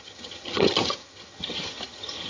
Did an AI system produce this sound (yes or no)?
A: yes